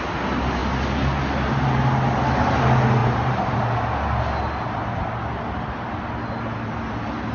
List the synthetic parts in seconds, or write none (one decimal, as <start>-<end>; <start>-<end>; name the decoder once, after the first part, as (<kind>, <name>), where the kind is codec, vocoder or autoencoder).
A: 3.0-3.6 (vocoder, BigVGAN v2)